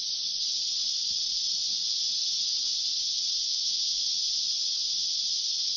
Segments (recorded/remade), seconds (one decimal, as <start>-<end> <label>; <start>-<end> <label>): 0.0-1.8 recorded; 1.8-2.7 remade; 2.7-3.5 recorded; 3.5-4.2 remade; 4.2-5.8 recorded